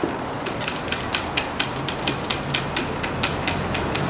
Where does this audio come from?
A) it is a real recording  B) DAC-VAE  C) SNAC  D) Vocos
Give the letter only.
A